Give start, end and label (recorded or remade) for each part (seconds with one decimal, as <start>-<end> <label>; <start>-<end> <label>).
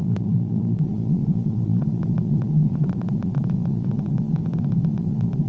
0.0-4.4 remade; 4.4-4.9 recorded; 4.9-5.5 remade